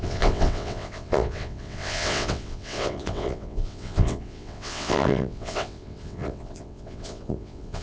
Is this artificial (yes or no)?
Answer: yes